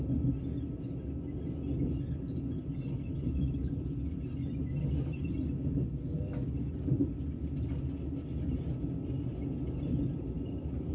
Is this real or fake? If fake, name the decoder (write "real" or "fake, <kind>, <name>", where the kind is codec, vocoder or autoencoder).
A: real